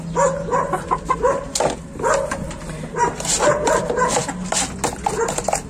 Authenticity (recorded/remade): recorded